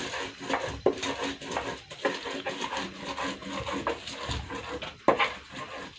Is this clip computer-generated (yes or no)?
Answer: no